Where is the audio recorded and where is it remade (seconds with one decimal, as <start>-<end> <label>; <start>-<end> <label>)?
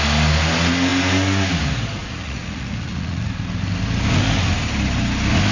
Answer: 0.0-2.0 recorded; 2.0-3.3 remade; 3.3-5.5 recorded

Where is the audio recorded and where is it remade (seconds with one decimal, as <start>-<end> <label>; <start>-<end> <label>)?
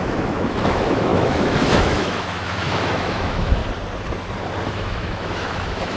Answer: 0.0-3.6 remade; 3.6-4.7 recorded; 4.7-6.0 remade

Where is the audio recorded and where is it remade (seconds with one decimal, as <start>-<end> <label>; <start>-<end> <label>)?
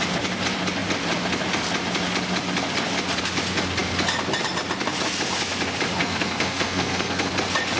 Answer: 0.0-6.0 recorded; 6.0-7.3 remade; 7.3-7.8 recorded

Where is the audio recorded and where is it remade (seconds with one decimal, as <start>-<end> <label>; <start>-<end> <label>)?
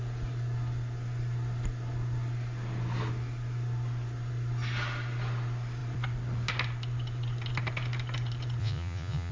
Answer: 0.0-8.6 recorded; 8.6-9.3 remade